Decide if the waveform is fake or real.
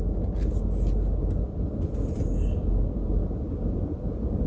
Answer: real